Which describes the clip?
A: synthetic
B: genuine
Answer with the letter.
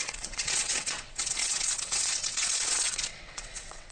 A